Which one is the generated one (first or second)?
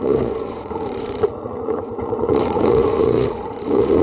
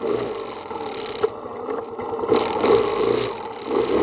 first